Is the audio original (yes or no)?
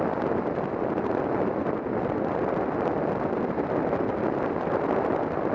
yes